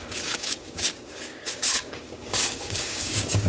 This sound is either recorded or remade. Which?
remade